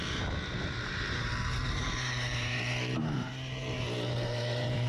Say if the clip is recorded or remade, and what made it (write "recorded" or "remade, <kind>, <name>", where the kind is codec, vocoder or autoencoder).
remade, vocoder, BigVGAN v2